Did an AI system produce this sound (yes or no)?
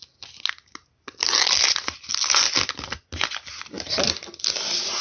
no